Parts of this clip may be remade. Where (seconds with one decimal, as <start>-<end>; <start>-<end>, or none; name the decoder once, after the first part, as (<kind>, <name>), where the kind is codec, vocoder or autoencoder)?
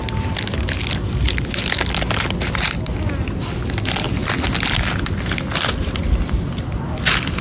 none